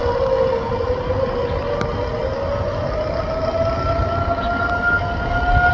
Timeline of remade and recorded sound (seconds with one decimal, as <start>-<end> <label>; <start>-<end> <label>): 0.0-5.7 recorded